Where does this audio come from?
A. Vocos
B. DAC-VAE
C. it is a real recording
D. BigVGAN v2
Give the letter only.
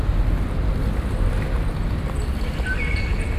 C